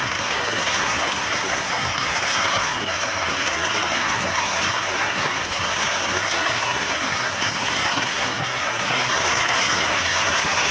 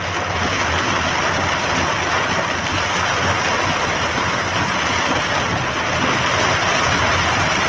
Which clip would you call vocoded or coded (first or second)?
first